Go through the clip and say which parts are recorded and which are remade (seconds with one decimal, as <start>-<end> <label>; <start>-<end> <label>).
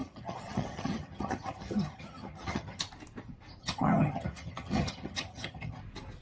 0.0-2.8 remade; 2.8-3.6 recorded; 3.6-5.8 remade; 5.8-6.2 recorded